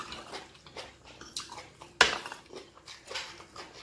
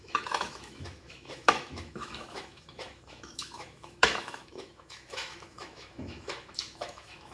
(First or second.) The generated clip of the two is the second